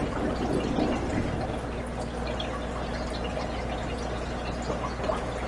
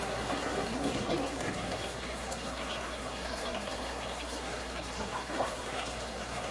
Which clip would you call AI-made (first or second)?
second